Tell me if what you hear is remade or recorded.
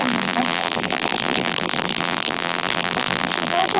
remade